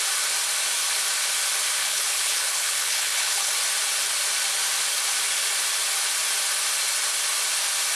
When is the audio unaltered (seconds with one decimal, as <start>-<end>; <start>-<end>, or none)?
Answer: 0.0-1.8; 3.5-8.0